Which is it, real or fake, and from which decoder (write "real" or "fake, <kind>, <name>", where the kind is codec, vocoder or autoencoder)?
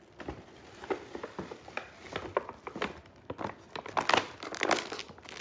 real